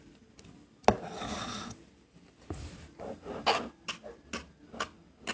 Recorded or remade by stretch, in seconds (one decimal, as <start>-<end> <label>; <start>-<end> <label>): 0.0-5.3 recorded

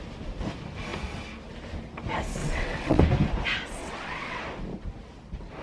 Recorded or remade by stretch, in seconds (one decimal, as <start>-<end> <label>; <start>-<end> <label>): 0.0-2.4 recorded; 2.4-3.0 remade; 3.0-3.8 recorded; 3.8-4.4 remade; 4.4-5.6 recorded

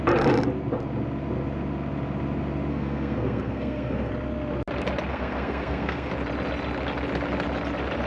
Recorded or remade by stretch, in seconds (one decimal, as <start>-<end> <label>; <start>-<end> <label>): 0.0-2.7 recorded; 2.7-4.1 remade; 4.1-5.1 recorded; 5.1-6.1 remade; 6.1-8.1 recorded

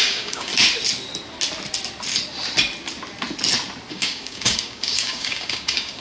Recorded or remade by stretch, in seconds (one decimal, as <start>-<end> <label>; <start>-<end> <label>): 0.0-0.5 remade; 0.5-3.9 recorded; 3.9-6.0 remade

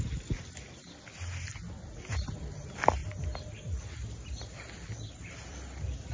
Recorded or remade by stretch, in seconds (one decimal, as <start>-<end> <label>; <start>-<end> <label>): 0.0-6.1 recorded

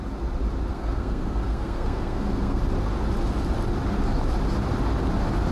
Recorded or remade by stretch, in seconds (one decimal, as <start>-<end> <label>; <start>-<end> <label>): 0.0-0.7 recorded; 0.7-2.6 remade; 2.6-5.5 recorded

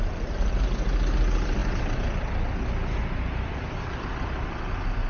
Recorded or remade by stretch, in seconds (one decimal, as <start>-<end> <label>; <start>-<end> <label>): 0.0-5.1 recorded

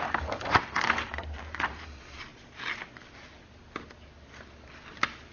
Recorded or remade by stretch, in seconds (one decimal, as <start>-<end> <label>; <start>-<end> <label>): 0.0-5.3 recorded